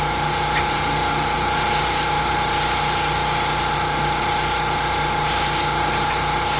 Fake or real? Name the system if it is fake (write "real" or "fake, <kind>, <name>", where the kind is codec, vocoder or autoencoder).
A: real